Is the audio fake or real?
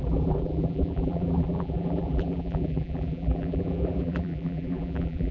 fake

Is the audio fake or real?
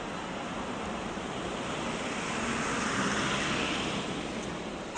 fake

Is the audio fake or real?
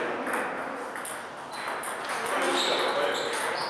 real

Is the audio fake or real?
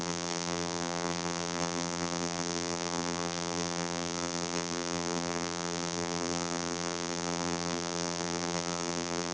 fake